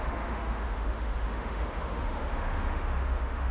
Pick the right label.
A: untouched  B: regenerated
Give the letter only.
B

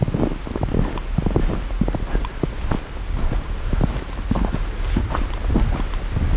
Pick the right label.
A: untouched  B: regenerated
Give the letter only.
A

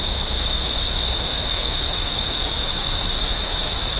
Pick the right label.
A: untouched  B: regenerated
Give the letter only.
B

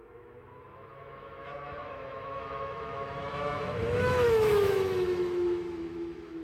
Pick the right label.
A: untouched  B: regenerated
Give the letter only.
B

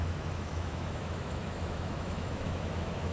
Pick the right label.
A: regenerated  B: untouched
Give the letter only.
A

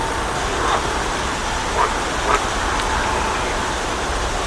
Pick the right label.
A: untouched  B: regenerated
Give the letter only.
A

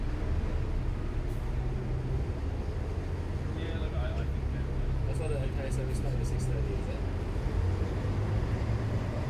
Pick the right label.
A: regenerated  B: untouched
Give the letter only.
B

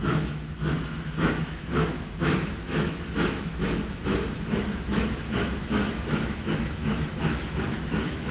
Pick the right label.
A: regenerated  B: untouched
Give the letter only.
A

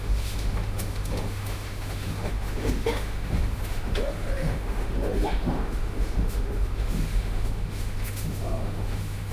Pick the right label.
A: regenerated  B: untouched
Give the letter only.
A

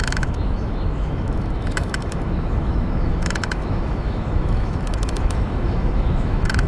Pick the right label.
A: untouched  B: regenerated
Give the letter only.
B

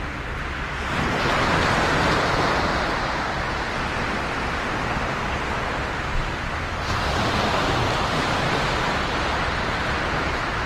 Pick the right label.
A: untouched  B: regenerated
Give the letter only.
A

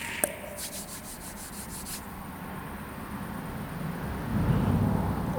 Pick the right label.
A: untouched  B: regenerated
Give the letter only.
A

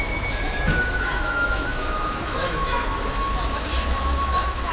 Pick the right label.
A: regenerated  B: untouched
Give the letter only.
A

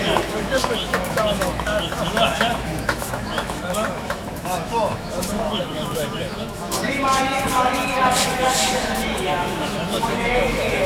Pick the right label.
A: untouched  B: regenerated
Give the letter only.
B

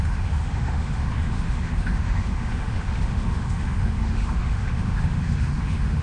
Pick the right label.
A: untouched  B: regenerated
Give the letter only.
B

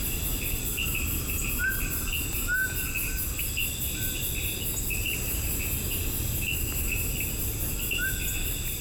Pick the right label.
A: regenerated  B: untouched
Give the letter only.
B